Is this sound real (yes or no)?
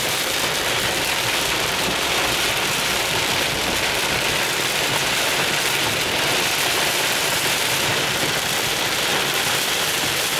no